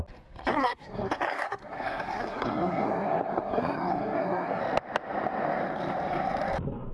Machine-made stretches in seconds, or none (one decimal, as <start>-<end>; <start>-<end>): 0.5-4.6